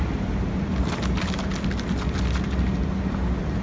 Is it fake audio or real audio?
real